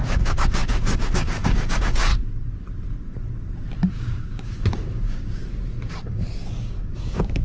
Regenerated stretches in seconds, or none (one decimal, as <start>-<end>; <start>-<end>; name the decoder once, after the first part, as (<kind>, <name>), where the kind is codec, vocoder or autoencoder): 0.0-2.1 (codec, DAC); 3.9-5.4; 5.9-7.4